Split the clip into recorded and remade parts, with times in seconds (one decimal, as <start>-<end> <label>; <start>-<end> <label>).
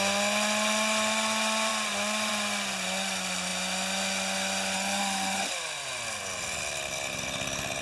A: 0.0-7.8 recorded